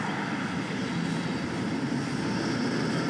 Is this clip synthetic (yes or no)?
no